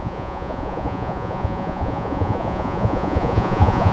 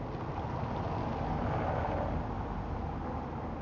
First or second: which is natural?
second